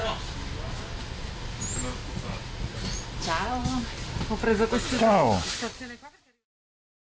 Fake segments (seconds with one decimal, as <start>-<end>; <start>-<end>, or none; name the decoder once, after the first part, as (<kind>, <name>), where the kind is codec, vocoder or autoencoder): 2.0-3.0 (vocoder, Vocos)